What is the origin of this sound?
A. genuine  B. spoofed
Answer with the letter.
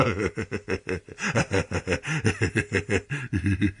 A